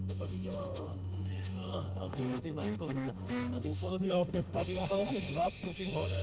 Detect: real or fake fake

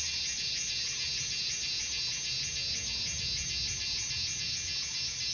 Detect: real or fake real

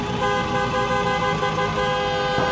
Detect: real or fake real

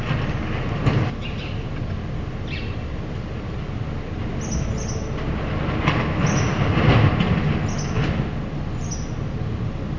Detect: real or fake real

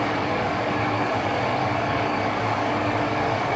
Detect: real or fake fake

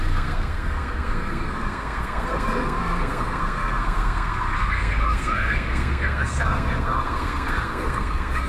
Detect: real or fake fake